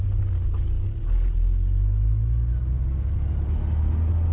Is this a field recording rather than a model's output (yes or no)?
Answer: yes